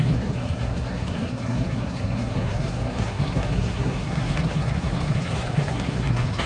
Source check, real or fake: fake